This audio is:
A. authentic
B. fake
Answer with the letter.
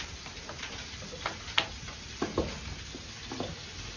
A